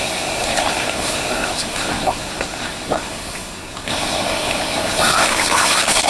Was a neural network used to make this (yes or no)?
yes